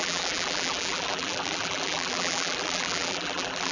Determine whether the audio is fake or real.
fake